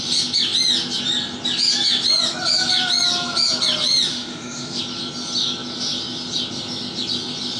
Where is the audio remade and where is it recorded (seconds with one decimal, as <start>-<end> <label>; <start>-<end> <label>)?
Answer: 0.0-4.1 recorded; 4.1-4.8 remade; 4.8-7.6 recorded